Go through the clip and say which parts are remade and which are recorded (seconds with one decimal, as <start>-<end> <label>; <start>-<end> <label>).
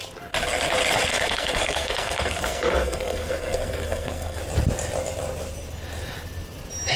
0.0-1.1 recorded; 1.1-4.4 remade; 4.4-7.0 recorded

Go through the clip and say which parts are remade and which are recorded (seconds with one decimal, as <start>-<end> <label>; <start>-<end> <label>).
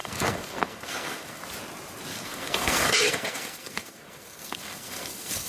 0.0-1.4 remade; 1.4-2.1 recorded; 2.1-5.5 remade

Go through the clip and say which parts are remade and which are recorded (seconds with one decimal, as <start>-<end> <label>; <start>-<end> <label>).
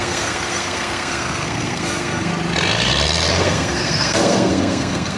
0.0-2.3 remade; 2.3-3.3 recorded; 3.3-5.2 remade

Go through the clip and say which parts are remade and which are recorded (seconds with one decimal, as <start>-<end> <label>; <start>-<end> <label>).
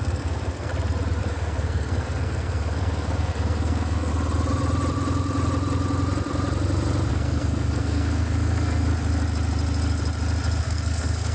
0.0-0.7 remade; 0.7-1.2 recorded; 1.2-4.1 remade; 4.1-7.1 recorded; 7.1-8.9 remade; 8.9-10.6 recorded; 10.6-11.3 remade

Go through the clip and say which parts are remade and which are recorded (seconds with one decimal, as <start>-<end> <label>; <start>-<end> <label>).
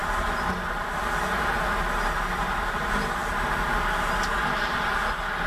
0.0-5.5 recorded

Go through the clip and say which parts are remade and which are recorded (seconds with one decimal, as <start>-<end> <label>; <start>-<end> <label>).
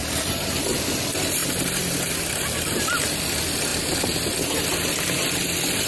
0.0-0.8 remade; 0.8-5.9 recorded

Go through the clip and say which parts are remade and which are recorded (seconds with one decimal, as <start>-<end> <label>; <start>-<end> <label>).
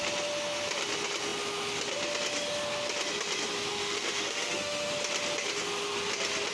0.0-3.7 recorded; 3.7-4.9 remade; 4.9-6.5 recorded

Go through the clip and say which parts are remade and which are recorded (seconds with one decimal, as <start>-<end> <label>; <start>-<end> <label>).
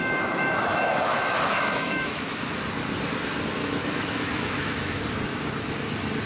0.0-2.6 remade; 2.6-3.6 recorded; 3.6-5.0 remade; 5.0-6.3 recorded